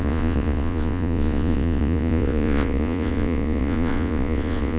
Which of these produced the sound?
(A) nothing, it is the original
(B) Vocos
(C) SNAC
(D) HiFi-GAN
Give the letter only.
B